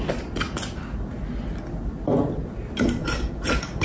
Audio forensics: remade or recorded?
recorded